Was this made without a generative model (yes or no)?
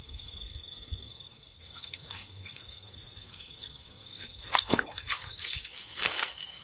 no